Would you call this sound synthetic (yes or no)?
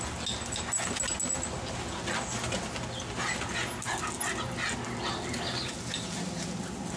no